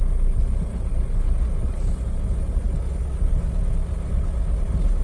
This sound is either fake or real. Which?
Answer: real